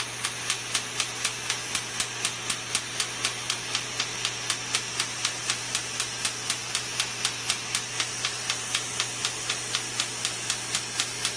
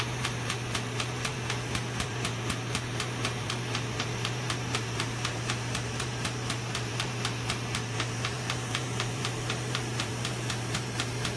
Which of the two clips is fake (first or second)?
second